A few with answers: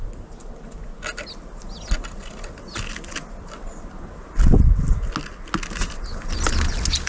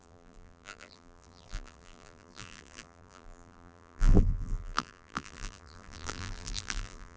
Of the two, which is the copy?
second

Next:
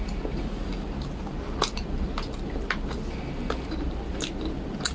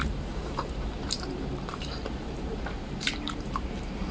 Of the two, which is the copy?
second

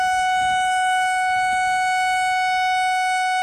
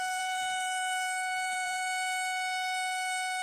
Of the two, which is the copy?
second